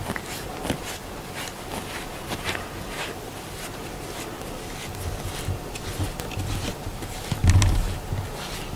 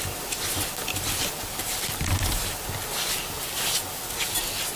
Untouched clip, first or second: first